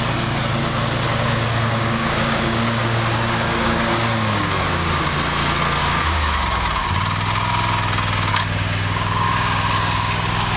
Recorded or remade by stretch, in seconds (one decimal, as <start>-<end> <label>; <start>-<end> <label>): 0.0-1.1 recorded; 1.1-5.0 remade; 5.0-5.8 recorded; 5.8-6.8 remade; 6.8-8.3 recorded; 8.3-10.6 remade